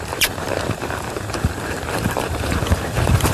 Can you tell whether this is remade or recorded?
remade